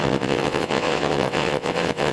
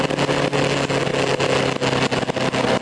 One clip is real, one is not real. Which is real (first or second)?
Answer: second